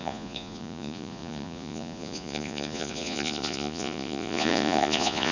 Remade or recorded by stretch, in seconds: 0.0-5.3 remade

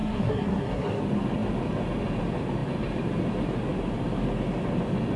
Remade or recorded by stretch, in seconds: 0.0-1.0 remade; 1.0-5.2 recorded

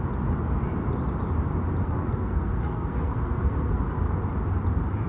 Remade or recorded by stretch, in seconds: 0.0-1.8 recorded; 1.8-3.8 remade; 3.8-5.1 recorded

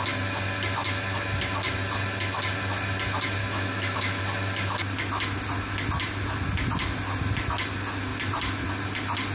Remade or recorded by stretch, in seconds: 0.0-3.4 recorded; 3.4-4.2 remade; 4.2-9.3 recorded

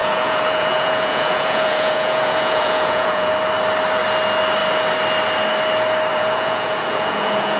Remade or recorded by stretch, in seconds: 0.0-3.3 remade; 3.3-6.1 recorded; 6.1-7.6 remade

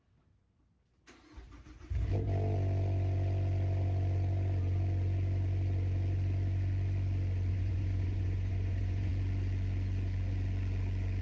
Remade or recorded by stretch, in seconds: 0.0-7.5 recorded; 7.5-9.1 remade; 9.1-11.2 recorded

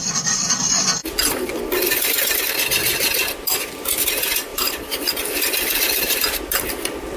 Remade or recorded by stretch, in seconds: 0.0-1.0 recorded; 1.0-2.5 remade; 2.5-4.5 recorded; 4.5-6.2 remade; 6.2-7.2 recorded